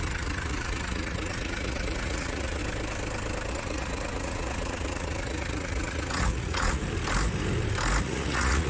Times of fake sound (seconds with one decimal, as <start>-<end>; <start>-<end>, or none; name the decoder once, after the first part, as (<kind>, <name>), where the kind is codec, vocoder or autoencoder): 0.0-2.6 (vocoder, Vocos); 3.5-6.8; 8.0-8.7